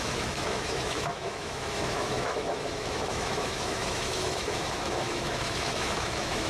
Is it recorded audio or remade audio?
remade